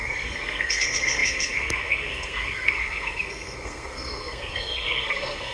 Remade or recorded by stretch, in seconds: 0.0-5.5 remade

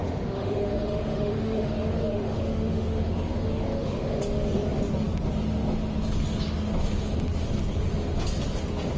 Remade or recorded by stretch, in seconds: 0.0-4.2 remade; 4.2-9.0 recorded

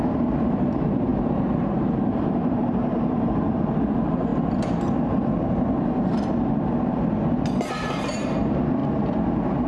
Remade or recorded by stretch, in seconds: 0.0-4.3 remade; 4.3-7.7 recorded; 7.7-8.8 remade; 8.8-9.7 recorded

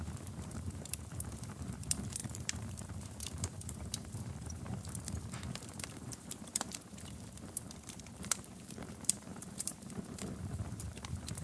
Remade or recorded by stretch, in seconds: 0.0-11.4 remade